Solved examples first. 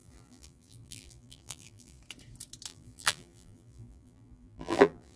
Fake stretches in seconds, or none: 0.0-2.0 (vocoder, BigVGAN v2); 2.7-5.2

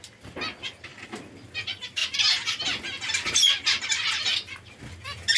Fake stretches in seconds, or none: none

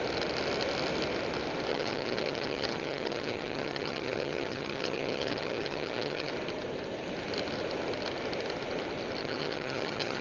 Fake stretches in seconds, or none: 1.7-6.3 (vocoder, HiFi-GAN); 9.2-10.2

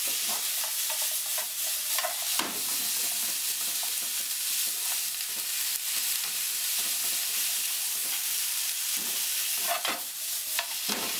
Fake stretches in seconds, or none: 2.3-2.8 (vocoder, BigVGAN v2); 8.0-9.5

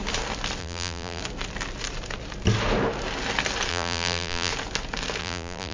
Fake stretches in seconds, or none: 0.6-1.2 (vocoder, BigVGAN v2); 3.7-4.5; 5.2-5.7

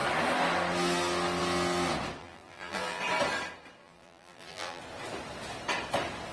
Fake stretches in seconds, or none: 2.2-3.0 (vocoder, BigVGAN v2); 3.8-4.8

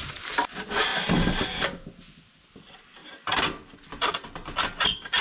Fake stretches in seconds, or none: none

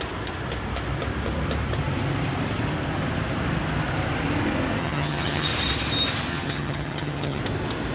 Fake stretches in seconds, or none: 4.8-5.5 (vocoder, HiFi-GAN); 6.3-7.4